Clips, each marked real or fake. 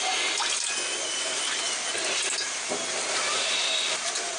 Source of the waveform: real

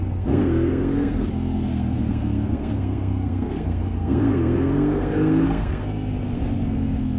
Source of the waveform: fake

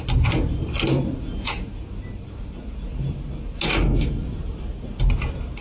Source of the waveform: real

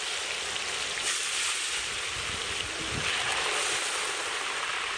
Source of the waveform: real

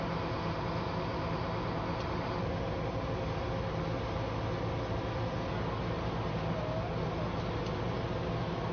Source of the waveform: real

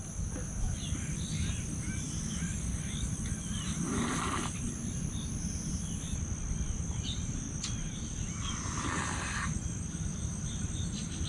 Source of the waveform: real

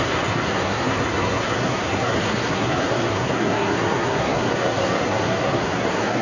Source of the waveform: fake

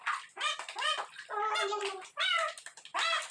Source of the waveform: real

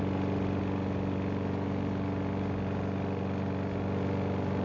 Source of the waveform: real